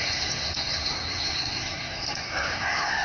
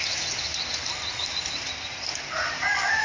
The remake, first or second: first